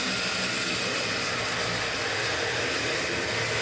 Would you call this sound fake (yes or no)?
no